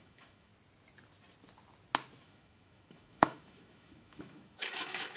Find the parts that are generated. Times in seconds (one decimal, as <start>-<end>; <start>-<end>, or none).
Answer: 0.0-0.5; 2.2-5.2